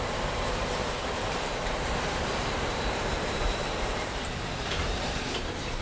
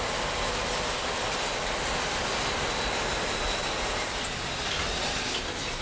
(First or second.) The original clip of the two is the second